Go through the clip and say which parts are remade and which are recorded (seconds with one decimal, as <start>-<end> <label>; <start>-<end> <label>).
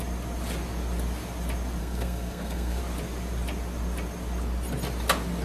0.0-1.8 recorded; 1.8-2.8 remade; 2.8-5.4 recorded